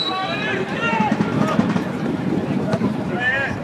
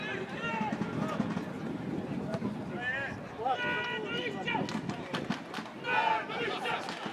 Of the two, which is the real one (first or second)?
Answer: second